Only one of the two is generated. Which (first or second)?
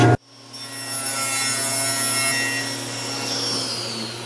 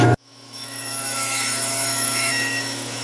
second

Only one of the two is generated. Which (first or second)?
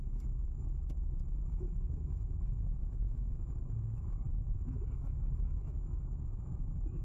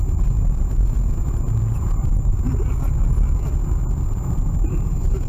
first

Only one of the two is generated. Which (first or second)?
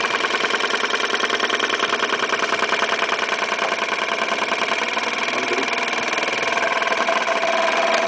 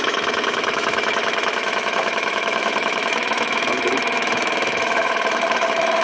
second